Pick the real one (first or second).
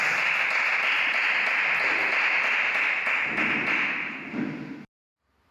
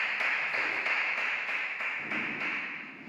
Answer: first